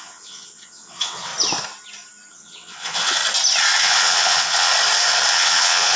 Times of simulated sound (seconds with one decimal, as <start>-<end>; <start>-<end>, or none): 0.0-1.3; 2.3-3.2; 3.8-4.7; 5.3-6.0